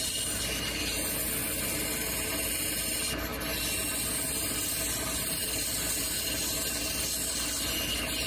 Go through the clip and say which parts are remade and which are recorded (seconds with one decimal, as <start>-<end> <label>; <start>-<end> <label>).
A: 0.0-8.3 recorded